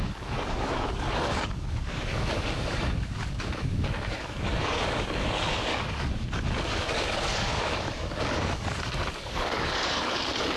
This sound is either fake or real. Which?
fake